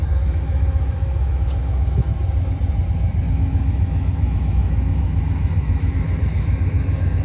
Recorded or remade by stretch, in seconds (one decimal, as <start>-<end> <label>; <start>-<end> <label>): 0.0-2.1 remade; 2.1-3.3 recorded; 3.3-7.2 remade